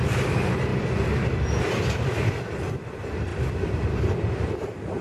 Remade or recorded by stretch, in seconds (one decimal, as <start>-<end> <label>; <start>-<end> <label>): 0.0-5.0 recorded